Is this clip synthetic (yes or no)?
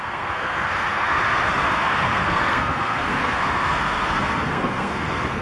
yes